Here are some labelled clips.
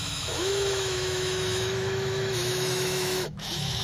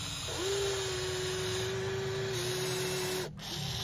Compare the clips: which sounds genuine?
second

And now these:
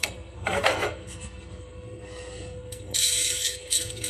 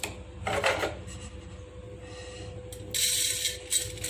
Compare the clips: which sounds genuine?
second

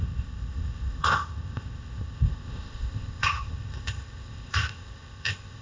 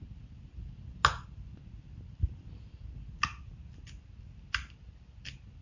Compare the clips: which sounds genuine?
second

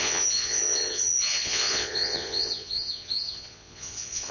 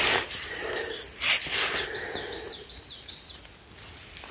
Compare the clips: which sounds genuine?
second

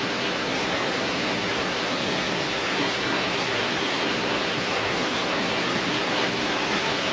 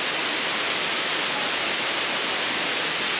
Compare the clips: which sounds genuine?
second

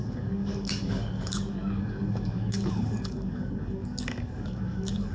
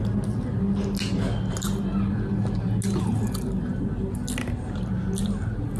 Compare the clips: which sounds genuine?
second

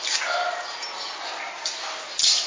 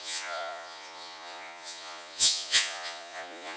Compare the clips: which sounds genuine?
first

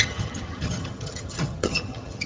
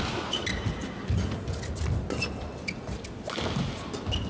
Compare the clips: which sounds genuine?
second